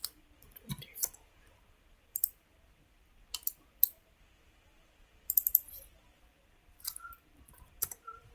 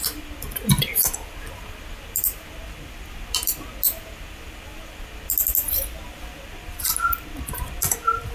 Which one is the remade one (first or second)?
first